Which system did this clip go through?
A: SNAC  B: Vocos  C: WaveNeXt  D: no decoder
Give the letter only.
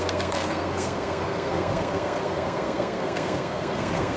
A